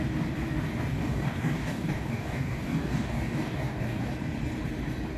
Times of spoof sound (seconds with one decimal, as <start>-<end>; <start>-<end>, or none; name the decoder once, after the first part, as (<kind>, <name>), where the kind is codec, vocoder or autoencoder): 0.9-4.0 (codec, DAC)